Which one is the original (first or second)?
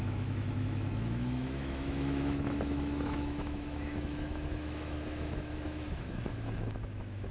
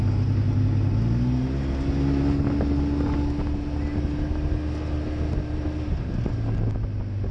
second